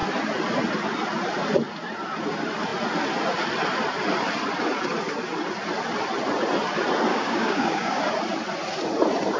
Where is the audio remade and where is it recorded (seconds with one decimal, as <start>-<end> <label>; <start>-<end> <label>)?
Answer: 0.0-7.1 recorded; 7.1-8.0 remade; 8.0-9.4 recorded